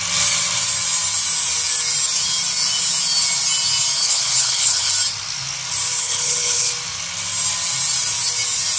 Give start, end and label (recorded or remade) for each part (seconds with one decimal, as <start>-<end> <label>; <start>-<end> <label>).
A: 0.0-4.0 recorded; 4.0-4.9 remade; 4.9-6.0 recorded; 6.0-6.7 remade; 6.7-8.8 recorded